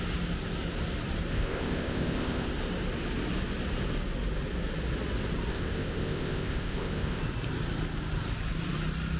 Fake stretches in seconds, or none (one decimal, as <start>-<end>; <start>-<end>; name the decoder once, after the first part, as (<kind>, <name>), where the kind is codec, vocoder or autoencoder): 1.3-2.5 (codec, ZipCodec); 5.5-7.2